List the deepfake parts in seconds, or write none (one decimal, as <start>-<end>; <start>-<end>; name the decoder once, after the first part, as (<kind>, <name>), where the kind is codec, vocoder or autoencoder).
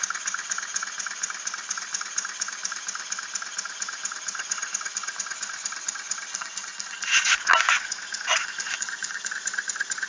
6.3-7.3 (vocoder, Vocos); 8.4-9.3